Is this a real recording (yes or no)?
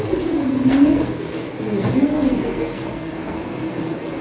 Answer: no